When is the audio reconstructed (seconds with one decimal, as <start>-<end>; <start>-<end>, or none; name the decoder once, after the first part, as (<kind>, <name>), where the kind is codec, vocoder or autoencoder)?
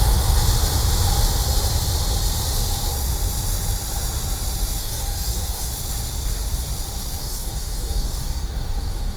4.8-5.7 (codec, DAC); 7.2-9.2